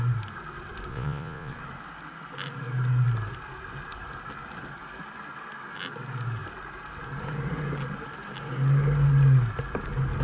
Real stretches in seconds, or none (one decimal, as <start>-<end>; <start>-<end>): 0.0-0.9; 1.5-10.2